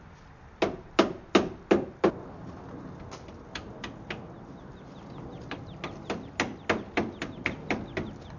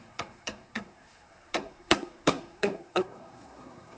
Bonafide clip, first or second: first